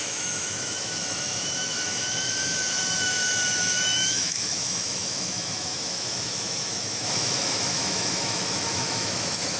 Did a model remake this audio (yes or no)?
yes